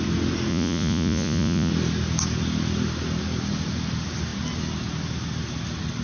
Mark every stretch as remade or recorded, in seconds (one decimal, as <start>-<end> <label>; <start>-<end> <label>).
0.0-0.5 recorded; 0.5-1.7 remade; 1.7-6.0 recorded